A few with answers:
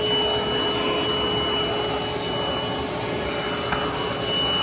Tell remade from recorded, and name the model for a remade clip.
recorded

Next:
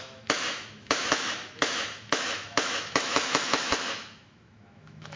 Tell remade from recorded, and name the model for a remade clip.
remade, autoencoder, DAC-VAE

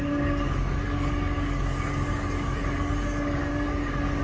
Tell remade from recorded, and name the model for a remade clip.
remade, codec, DAC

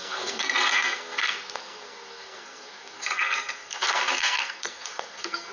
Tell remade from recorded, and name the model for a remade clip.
remade, codec, SNAC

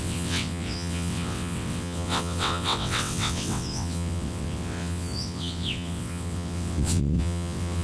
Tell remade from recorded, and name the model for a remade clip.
remade, vocoder, WaveNeXt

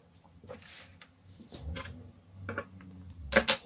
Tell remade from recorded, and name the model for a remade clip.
recorded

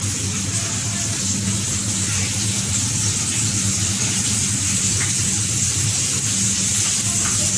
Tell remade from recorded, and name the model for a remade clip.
recorded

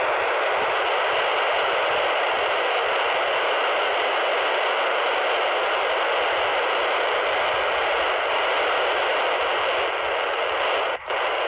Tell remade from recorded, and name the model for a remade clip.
recorded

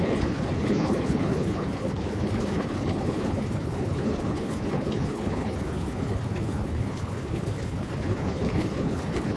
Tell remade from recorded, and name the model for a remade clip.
remade, codec, HILCodec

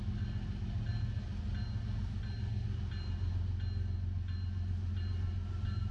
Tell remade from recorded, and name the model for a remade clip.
recorded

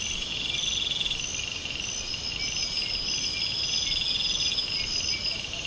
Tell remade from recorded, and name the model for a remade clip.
recorded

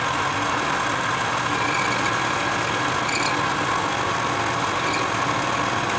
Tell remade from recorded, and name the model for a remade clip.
recorded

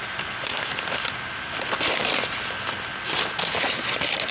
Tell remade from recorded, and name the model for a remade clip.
recorded